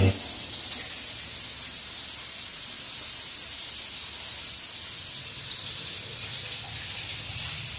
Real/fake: real